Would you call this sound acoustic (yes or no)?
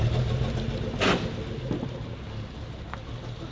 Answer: yes